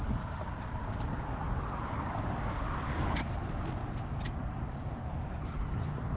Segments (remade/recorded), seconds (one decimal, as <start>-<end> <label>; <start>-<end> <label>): 0.0-1.4 recorded; 1.4-1.9 remade; 1.9-3.8 recorded; 3.8-4.8 remade; 4.8-6.2 recorded